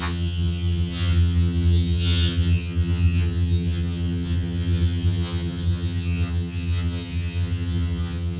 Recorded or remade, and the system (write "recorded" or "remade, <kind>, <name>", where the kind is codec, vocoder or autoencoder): remade, vocoder, HiFi-GAN